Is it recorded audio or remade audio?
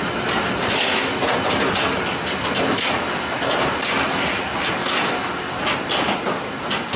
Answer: recorded